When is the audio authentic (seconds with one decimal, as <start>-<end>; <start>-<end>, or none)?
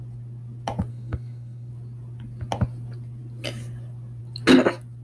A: 0.0-0.9; 1.7-5.0